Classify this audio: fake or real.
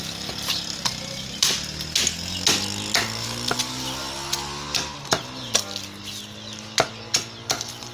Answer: real